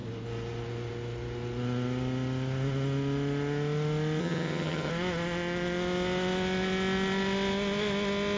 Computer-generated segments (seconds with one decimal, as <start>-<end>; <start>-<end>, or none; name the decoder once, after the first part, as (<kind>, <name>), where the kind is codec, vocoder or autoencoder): 4.2-4.9 (vocoder, HiFi-GAN)